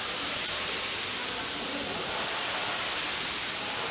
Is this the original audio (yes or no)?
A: yes